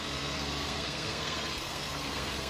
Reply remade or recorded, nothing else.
remade